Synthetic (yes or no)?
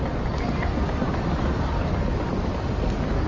no